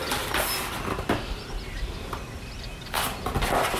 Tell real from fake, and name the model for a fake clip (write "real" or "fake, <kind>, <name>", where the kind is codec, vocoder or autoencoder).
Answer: real